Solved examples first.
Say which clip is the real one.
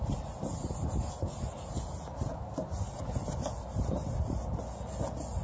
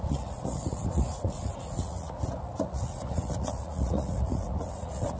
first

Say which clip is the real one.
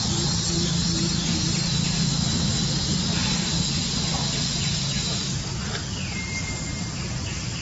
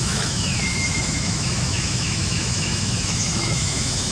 first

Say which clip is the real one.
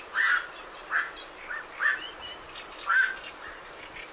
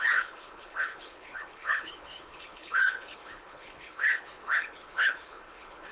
first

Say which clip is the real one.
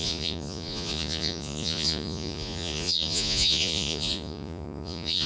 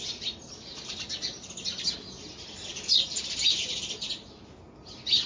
second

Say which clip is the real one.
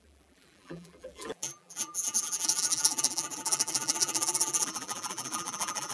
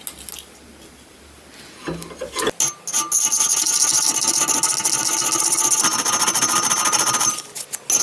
second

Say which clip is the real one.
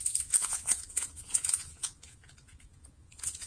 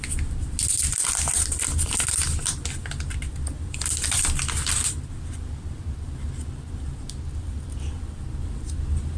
second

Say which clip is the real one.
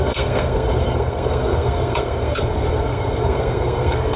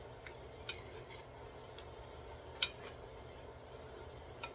second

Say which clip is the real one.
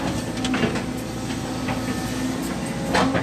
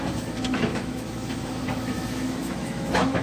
first